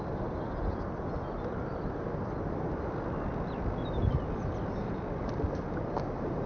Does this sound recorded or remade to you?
recorded